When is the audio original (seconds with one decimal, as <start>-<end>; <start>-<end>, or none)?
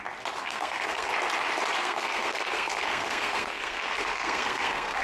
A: 0.0-0.4; 1.1-1.8